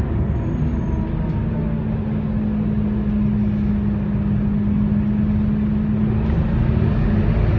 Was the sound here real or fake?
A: real